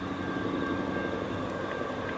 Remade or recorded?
recorded